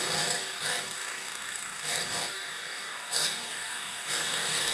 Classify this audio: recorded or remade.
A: remade